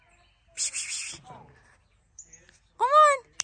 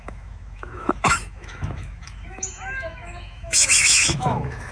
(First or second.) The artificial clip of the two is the second